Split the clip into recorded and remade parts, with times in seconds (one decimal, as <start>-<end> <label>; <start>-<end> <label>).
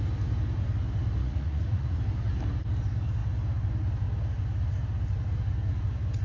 0.0-1.2 recorded; 1.2-2.0 remade; 2.0-6.2 recorded